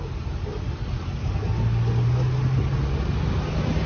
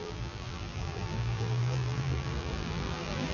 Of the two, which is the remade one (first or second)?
second